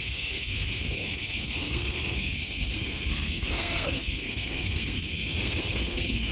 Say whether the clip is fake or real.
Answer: fake